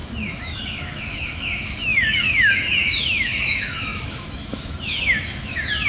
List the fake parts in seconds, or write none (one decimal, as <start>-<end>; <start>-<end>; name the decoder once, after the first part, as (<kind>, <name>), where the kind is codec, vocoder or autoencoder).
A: 0.0-5.9 (autoencoder, DAC-VAE)